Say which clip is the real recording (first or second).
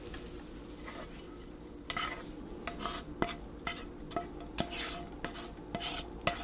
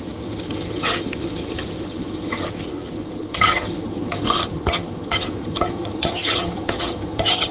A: first